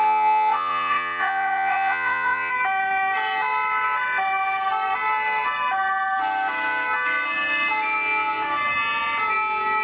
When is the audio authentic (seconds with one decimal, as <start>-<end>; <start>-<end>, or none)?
2.5-9.8